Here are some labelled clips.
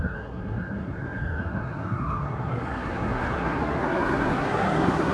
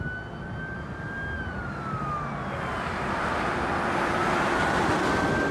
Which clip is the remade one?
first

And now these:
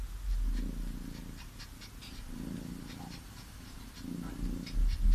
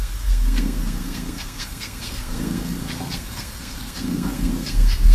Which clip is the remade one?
second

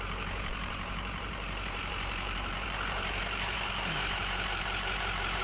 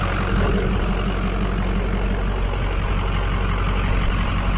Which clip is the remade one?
first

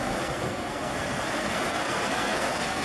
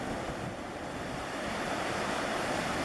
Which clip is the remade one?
first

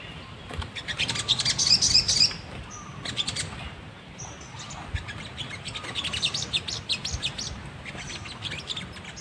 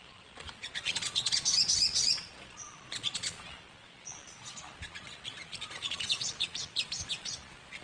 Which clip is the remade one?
second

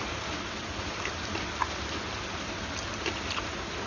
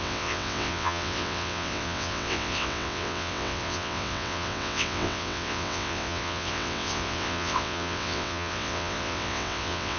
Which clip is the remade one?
second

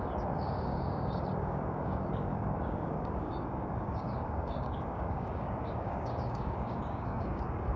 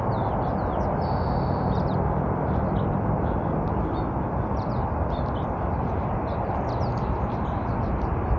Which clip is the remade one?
first